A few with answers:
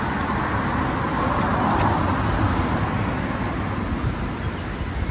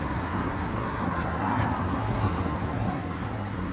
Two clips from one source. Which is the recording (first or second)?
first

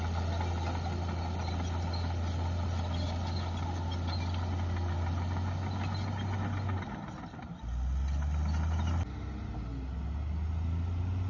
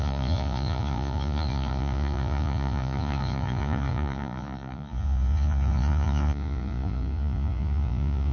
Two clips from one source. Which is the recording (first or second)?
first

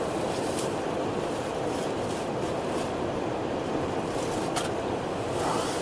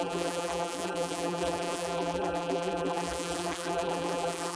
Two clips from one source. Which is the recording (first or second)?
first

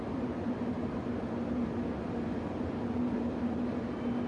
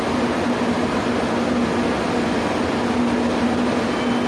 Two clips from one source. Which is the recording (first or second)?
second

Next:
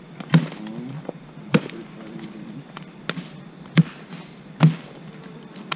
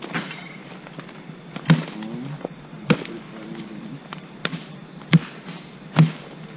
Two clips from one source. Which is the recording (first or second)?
second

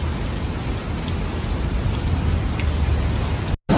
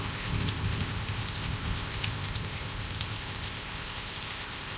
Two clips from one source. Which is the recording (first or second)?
first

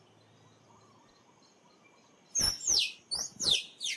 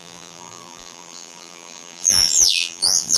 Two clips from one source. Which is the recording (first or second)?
first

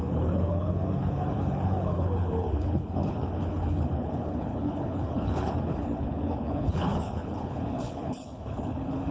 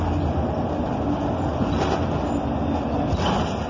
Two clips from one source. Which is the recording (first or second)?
second